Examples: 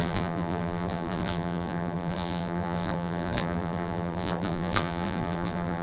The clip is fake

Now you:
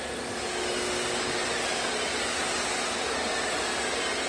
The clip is real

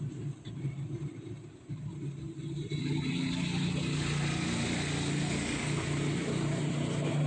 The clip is real